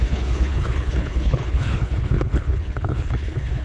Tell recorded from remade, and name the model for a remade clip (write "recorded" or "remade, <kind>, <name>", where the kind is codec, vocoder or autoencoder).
remade, codec, HILCodec